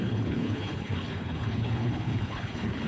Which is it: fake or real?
fake